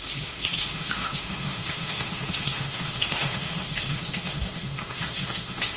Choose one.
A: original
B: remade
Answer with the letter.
B